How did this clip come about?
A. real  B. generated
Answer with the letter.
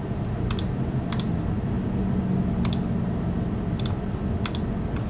A